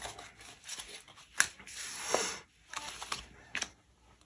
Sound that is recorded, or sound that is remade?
recorded